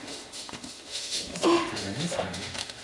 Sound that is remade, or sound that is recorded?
remade